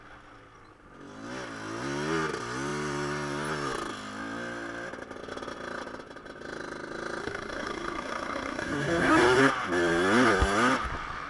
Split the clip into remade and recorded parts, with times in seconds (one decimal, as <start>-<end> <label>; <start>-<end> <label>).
0.0-7.2 recorded; 7.2-9.4 remade; 9.4-11.3 recorded